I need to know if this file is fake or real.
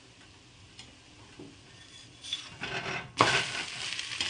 real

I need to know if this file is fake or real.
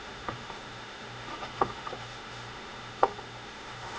fake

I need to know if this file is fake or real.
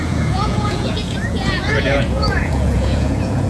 fake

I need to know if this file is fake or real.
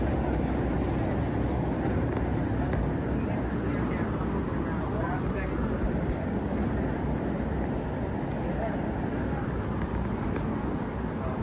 real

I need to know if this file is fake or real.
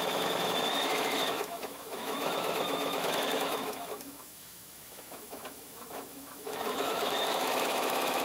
fake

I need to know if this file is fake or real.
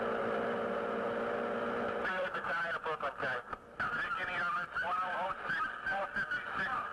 real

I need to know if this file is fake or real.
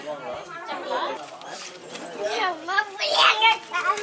real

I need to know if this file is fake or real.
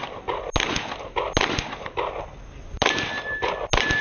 real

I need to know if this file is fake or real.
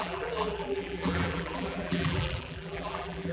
fake